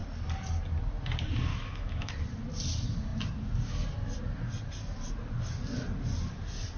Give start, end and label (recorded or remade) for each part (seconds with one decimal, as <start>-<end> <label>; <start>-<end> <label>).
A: 0.0-1.5 recorded; 1.5-2.1 remade; 2.1-6.8 recorded